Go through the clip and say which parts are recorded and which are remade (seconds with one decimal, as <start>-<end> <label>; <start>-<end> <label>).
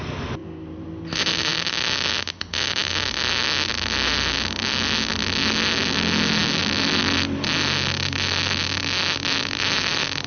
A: 0.0-10.3 recorded